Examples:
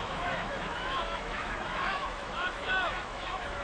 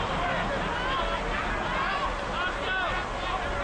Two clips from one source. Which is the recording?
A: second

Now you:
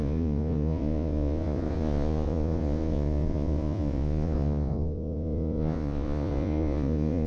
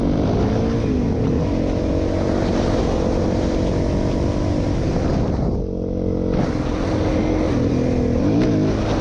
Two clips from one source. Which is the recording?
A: second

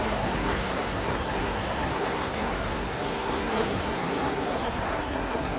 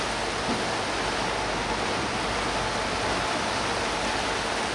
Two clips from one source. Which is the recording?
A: second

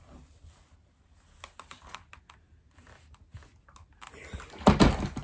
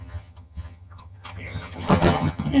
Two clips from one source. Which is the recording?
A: first